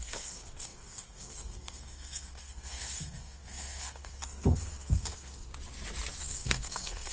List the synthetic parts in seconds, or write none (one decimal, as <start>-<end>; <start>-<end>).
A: 0.0-5.5; 6.2-7.1